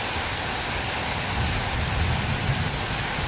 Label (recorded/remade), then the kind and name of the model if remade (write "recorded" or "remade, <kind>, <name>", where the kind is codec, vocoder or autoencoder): recorded